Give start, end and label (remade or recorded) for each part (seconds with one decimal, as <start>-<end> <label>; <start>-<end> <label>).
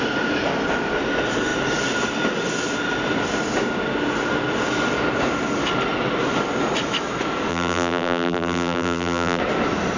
0.0-7.5 recorded; 7.5-9.4 remade; 9.4-10.0 recorded